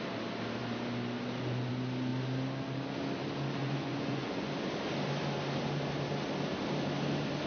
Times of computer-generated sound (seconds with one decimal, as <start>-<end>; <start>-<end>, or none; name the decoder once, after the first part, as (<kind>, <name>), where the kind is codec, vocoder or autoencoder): 3.6-4.5 (vocoder, Vocos)